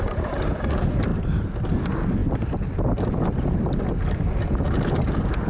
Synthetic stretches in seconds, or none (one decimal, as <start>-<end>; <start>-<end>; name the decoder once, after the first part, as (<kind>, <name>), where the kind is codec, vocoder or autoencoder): none